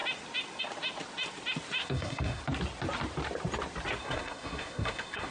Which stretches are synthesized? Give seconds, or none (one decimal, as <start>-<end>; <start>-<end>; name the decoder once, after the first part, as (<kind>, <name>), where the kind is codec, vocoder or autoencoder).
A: 1.8-2.4 (codec, SNAC); 4.0-5.3